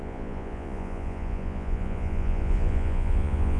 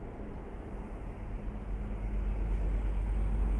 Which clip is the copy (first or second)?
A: first